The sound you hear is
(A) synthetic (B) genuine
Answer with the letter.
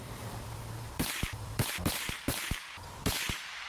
A